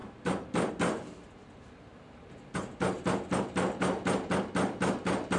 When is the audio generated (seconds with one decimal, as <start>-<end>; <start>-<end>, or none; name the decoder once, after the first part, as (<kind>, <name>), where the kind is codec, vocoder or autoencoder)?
1.9-4.3 (vocoder, BigVGAN v2)